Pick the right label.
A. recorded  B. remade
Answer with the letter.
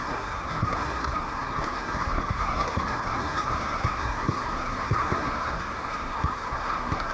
B